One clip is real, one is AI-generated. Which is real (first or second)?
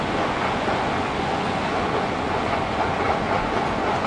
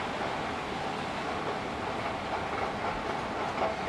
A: second